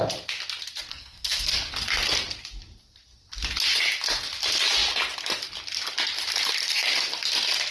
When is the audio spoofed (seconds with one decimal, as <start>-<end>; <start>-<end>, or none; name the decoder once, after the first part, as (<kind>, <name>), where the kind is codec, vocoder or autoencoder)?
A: 0.9-1.7 (codec, SNAC)